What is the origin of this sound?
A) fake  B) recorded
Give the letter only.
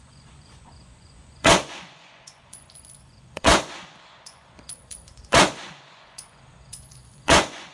A